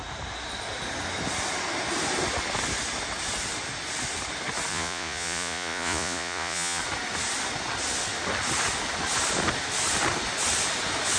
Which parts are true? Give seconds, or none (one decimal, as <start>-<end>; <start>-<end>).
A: 0.0-4.7; 6.8-11.2